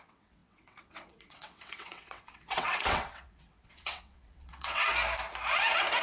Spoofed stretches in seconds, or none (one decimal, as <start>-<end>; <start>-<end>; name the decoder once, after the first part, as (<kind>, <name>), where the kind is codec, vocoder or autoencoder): 0.0-4.9 (vocoder, WaveNeXt)